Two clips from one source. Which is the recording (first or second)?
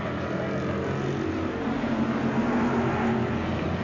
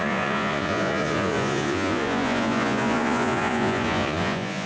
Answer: first